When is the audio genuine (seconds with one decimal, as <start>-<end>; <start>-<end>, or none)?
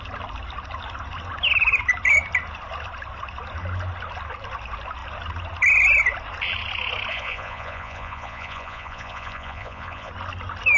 0.0-7.1; 10.1-10.8